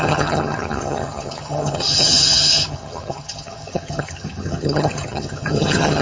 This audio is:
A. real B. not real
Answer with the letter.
B